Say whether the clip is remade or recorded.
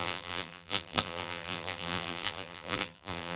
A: remade